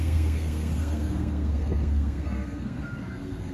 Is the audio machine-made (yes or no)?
yes